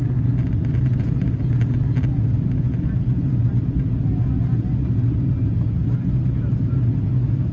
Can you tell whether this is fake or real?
real